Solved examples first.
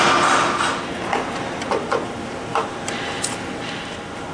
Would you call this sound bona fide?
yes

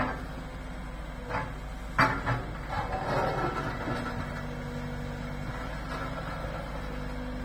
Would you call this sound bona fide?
yes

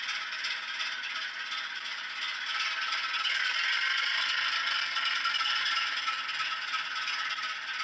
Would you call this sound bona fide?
yes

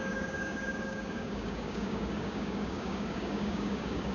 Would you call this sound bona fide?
no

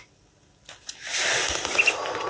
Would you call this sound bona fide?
yes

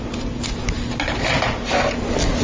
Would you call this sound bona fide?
yes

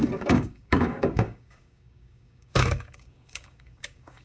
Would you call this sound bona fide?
no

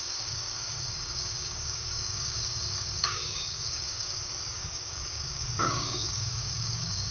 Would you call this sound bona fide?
no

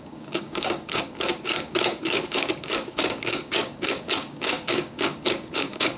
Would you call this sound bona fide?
no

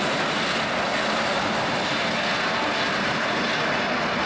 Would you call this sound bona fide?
yes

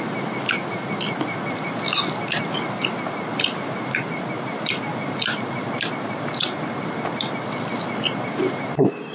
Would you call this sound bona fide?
yes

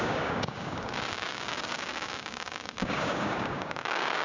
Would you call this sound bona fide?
no